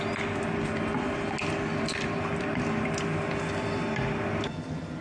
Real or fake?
real